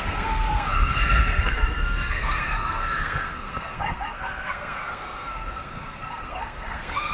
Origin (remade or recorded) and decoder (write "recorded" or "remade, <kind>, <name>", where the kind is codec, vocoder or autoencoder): remade, codec, SNAC